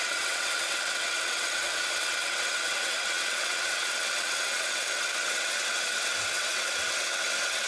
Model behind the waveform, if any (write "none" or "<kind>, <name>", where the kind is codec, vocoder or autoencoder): vocoder, WaveNeXt